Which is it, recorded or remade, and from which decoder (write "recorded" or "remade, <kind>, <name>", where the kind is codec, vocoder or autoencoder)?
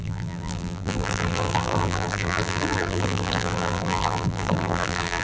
remade, vocoder, BigVGAN v2